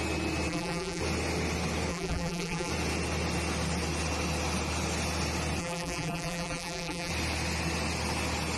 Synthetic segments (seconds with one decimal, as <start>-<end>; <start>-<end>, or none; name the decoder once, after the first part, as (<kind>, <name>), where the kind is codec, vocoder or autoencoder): 0.5-1.0 (vocoder, BigVGAN v2); 1.9-2.7; 5.6-7.1